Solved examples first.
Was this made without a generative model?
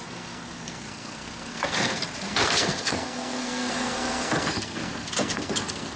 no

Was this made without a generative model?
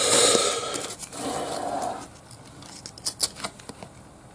yes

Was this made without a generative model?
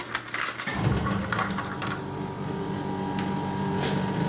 yes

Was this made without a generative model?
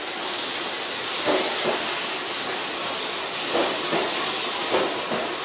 yes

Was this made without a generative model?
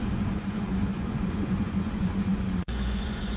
no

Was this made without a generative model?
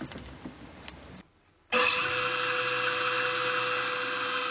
yes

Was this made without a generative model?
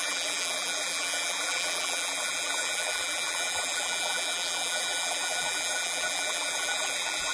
no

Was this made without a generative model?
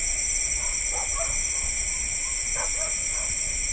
yes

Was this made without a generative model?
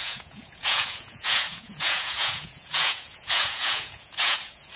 no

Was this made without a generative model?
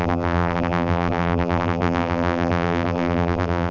no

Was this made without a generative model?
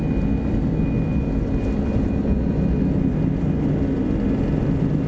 yes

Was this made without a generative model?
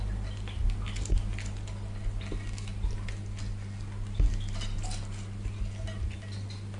yes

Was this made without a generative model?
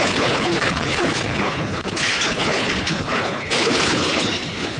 no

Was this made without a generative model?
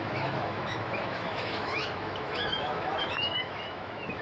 no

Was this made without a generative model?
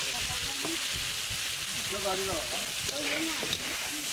yes